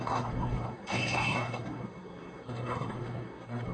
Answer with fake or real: fake